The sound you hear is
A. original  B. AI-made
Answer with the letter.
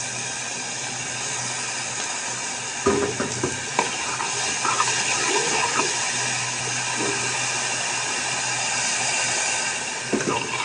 A